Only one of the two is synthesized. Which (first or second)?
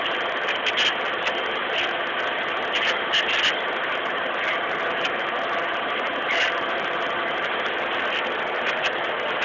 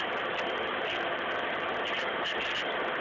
second